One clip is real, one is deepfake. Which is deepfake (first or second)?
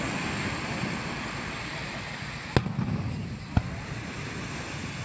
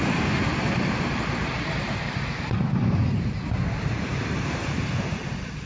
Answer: second